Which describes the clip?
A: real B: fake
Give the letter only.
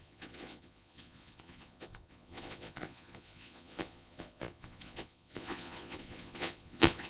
B